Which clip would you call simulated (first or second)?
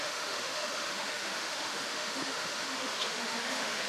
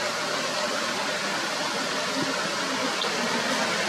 first